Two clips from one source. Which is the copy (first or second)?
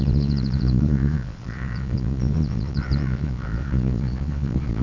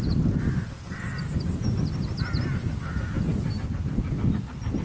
first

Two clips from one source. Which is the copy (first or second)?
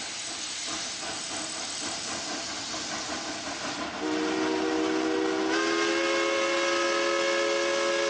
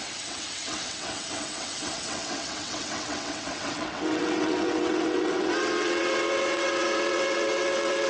second